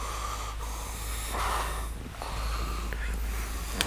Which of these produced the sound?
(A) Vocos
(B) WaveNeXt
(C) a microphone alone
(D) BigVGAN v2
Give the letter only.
C